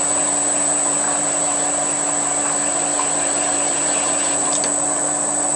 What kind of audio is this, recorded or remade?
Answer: recorded